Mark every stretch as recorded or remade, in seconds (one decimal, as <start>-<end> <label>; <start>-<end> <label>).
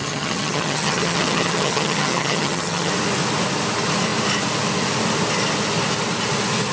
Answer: 0.0-2.9 remade; 2.9-6.7 recorded